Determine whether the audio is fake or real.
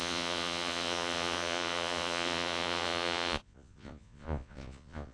fake